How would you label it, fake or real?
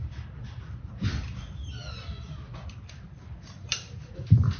real